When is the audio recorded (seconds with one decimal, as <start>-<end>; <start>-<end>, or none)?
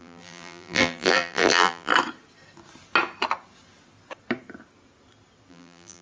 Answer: 1.9-5.5